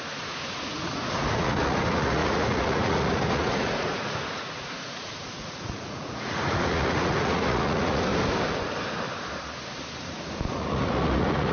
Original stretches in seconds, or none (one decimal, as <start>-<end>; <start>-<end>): 8.1-10.5